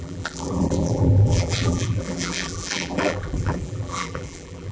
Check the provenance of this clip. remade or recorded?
remade